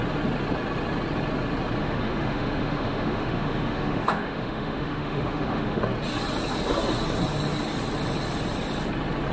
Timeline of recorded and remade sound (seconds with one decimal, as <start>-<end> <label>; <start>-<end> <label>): 0.0-1.8 recorded; 1.8-5.8 remade; 5.8-9.3 recorded